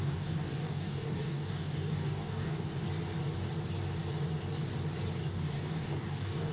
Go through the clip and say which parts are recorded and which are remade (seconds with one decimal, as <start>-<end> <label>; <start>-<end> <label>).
0.0-2.7 remade; 2.7-5.3 recorded; 5.3-6.5 remade